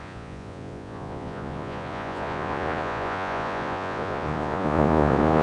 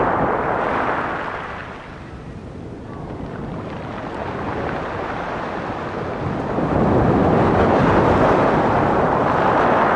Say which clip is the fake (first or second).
first